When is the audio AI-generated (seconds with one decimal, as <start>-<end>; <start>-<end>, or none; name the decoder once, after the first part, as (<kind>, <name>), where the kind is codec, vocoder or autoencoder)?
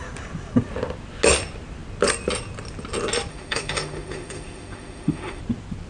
3.3-5.4 (autoencoder, DAC-VAE)